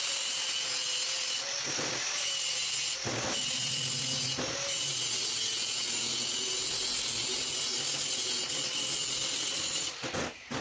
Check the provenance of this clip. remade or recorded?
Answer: recorded